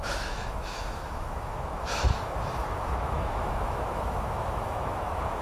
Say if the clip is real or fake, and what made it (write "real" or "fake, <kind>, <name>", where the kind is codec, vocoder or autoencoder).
fake, autoencoder, DAC-VAE